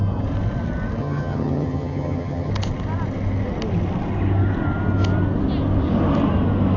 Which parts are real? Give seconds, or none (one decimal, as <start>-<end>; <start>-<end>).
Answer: 0.0-1.0; 2.5-6.8